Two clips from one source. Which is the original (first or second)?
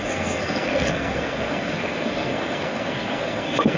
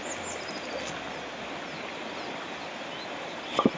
second